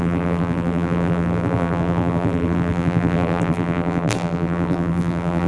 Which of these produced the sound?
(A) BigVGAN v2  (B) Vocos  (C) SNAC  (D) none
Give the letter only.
A